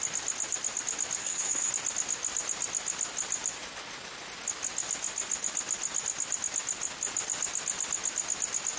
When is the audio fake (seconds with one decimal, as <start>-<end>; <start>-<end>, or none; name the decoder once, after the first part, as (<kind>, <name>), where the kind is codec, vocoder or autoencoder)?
1.2-1.7 (codec, SNAC)